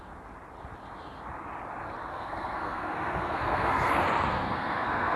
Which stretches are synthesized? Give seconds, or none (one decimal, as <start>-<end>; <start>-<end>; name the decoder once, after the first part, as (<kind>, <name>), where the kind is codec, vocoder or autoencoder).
2.1-3.9 (codec, SNAC); 4.3-5.2